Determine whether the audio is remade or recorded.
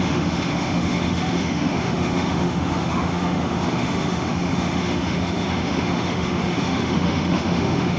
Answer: remade